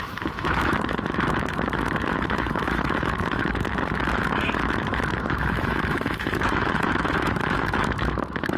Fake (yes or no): yes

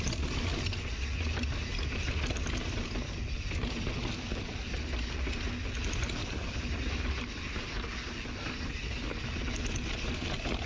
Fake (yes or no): no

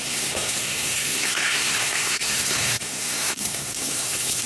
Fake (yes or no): yes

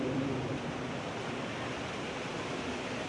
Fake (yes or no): no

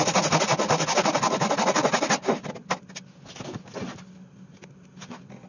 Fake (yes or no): no